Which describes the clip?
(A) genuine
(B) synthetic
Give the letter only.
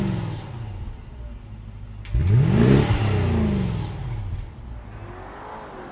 A